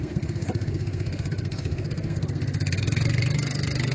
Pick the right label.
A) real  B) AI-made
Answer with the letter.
B